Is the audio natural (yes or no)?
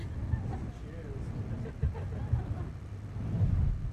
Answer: yes